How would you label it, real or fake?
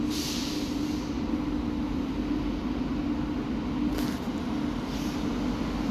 real